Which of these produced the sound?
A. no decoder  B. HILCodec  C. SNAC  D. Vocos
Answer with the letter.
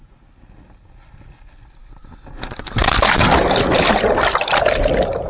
A